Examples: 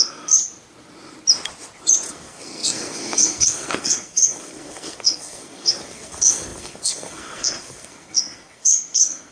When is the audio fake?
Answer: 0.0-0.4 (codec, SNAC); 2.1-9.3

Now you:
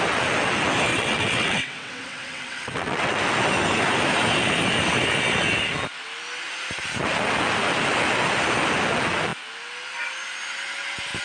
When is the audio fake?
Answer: 0.9-3.2 (vocoder, WaveNeXt)

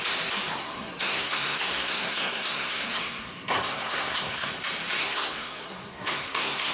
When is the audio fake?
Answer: 0.5-4.5 (codec, SNAC); 5.0-6.7

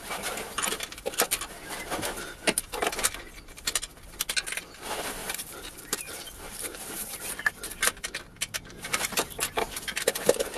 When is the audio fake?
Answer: 5.2-7.3 (vocoder, BigVGAN v2)

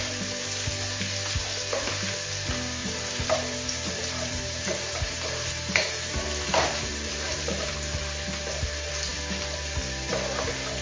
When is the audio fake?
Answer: 2.8-7.7 (vocoder, BigVGAN v2)

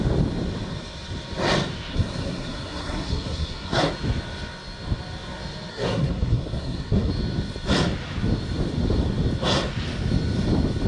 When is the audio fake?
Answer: 1.9-3.9 (codec, SNAC); 5.7-7.1

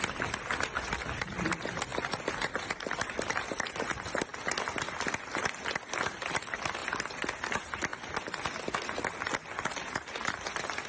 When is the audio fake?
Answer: 0.0-1.9 (vocoder, BigVGAN v2); 2.5-6.8; 7.4-7.9; 8.6-10.9